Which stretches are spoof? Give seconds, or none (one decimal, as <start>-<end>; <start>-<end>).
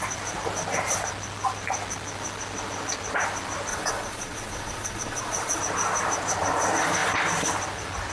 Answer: 3.7-5.6